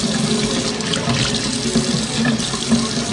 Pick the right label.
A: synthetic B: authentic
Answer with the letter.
B